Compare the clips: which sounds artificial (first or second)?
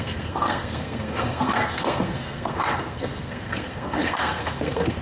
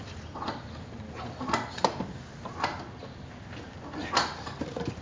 first